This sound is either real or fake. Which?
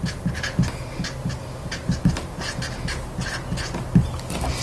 real